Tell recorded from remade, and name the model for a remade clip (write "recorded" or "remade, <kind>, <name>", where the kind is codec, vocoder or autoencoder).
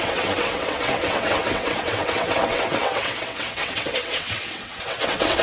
remade, vocoder, WaveNeXt